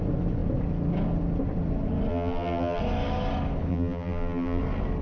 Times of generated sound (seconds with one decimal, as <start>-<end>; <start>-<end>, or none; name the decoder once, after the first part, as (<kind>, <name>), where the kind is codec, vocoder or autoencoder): 2.1-2.8 (vocoder, BigVGAN v2); 3.7-4.6